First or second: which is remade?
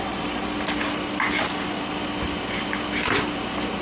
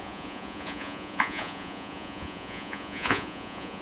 second